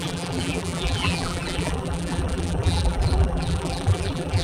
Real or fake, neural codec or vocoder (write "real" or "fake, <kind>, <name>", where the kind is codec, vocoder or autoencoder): fake, vocoder, BigVGAN v2